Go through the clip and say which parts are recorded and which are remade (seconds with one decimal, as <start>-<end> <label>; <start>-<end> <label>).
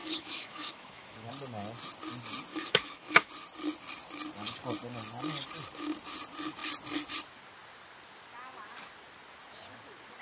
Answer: 0.0-1.3 remade; 1.3-2.5 recorded; 2.5-3.3 remade; 3.3-10.2 recorded